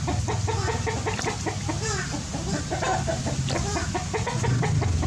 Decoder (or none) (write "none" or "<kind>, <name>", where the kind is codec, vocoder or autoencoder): none